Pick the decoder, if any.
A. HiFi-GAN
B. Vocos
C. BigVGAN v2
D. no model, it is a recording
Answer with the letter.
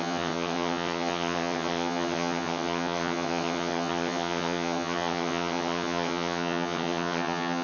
A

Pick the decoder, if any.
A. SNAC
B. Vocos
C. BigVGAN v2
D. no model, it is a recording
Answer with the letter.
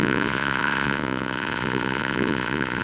B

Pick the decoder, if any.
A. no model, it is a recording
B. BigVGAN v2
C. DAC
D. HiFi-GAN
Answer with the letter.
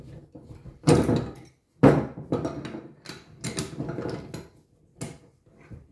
A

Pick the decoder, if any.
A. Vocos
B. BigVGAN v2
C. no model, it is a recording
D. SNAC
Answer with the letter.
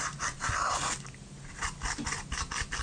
C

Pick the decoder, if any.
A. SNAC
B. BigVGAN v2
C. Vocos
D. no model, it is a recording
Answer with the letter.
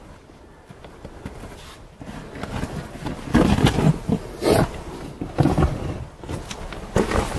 D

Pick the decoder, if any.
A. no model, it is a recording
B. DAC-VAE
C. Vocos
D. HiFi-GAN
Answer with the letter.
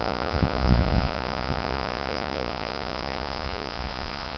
C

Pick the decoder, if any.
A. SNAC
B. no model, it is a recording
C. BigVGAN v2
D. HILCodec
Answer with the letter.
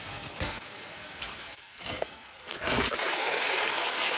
A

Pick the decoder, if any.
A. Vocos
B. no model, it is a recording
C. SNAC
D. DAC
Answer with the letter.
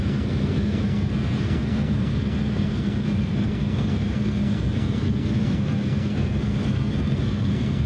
C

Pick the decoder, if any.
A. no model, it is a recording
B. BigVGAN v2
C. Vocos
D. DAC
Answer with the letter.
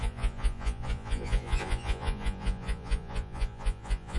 C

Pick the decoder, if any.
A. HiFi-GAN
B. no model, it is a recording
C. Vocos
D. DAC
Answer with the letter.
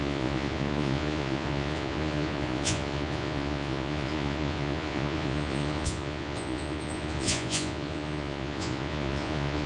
C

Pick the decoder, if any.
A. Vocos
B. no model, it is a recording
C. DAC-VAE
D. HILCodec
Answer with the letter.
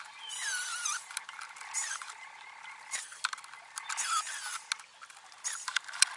B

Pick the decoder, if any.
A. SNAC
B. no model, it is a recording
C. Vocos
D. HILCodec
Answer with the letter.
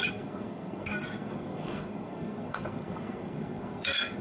A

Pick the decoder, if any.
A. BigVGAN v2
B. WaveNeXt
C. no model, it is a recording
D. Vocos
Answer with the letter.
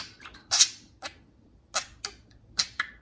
C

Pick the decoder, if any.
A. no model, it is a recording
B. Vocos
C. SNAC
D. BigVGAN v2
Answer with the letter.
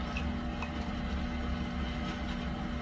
A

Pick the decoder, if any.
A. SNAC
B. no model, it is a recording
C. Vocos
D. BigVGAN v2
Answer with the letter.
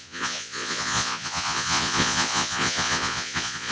C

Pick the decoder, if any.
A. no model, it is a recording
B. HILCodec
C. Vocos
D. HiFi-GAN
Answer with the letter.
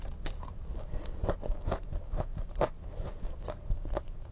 A